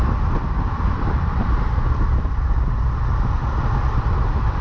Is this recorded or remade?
recorded